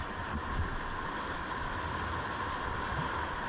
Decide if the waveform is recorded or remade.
recorded